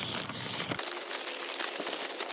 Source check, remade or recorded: recorded